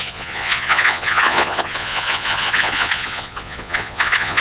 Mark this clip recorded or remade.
remade